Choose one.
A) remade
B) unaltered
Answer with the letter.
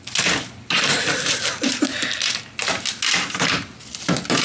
B